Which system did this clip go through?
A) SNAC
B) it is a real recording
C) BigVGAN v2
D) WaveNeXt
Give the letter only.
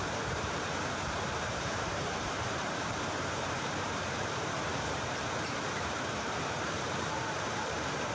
C